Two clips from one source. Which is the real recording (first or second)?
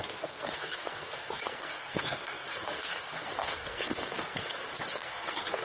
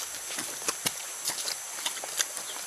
second